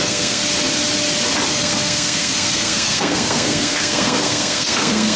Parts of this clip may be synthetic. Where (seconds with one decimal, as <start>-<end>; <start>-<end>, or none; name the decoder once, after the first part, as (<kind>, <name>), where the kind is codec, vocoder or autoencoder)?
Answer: 0.0-0.4 (codec, SNAC); 1.5-5.2